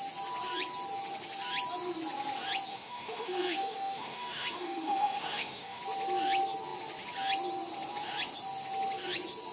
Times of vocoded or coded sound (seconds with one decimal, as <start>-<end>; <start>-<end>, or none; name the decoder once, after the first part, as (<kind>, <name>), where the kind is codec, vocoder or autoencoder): 2.7-5.8 (autoencoder, DAC-VAE)